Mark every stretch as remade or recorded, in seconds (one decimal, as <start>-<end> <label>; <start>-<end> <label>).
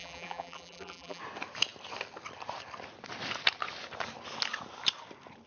0.0-1.2 remade; 1.2-5.5 recorded